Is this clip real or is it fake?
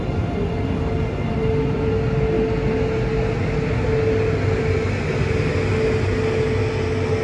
real